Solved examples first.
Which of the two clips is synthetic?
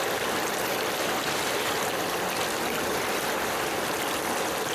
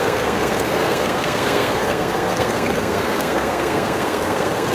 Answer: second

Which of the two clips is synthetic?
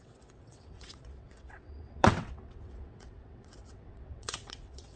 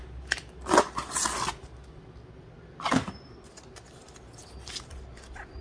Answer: first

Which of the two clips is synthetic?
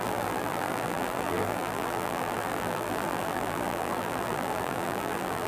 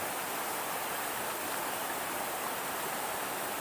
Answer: first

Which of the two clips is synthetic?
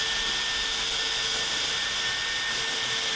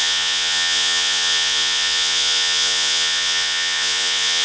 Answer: second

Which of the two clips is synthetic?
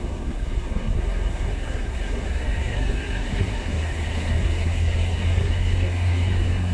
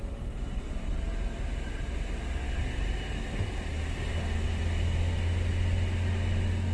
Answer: first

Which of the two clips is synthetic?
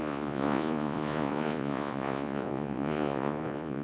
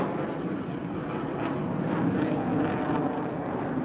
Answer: first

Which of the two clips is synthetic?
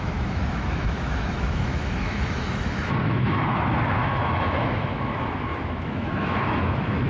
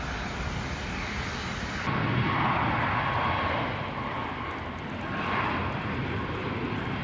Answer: first